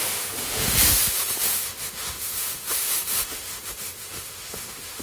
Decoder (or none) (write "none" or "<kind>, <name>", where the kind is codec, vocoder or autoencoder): autoencoder, DAC-VAE